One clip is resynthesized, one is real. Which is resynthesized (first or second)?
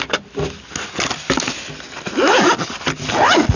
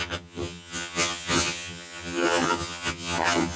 second